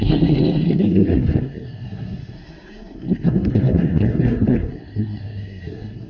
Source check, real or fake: fake